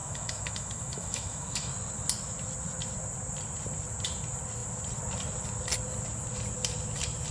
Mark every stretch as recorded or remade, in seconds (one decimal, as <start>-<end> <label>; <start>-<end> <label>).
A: 0.0-1.7 remade; 1.7-7.3 recorded